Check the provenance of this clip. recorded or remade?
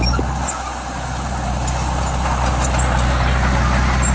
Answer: recorded